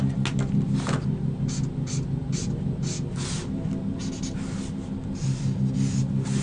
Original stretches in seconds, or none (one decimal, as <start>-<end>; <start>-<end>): 0.0-6.4